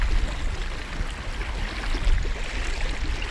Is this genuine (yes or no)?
yes